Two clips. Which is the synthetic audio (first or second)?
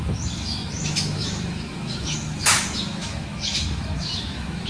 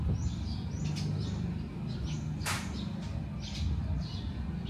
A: first